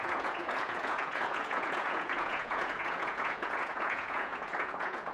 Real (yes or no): no